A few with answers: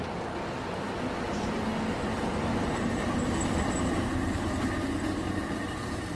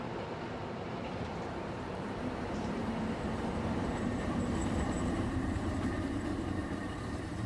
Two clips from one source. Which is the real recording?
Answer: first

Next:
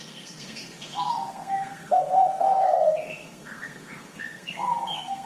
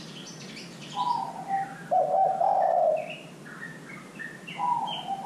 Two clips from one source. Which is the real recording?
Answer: second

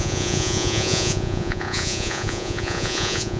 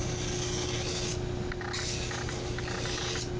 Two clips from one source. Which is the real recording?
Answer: second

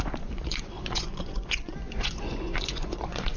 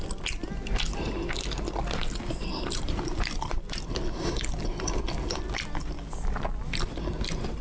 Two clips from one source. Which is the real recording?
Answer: second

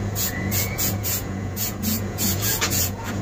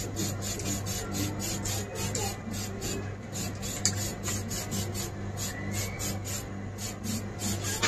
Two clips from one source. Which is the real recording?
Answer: second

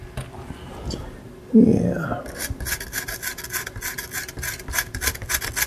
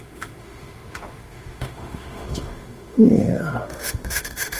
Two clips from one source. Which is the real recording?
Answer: first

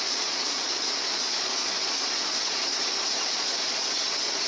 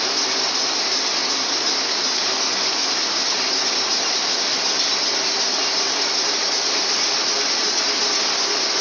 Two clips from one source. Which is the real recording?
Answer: second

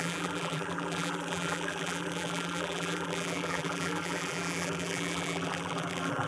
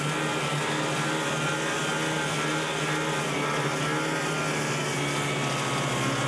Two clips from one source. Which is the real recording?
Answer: second